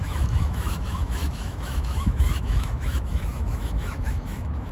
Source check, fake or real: fake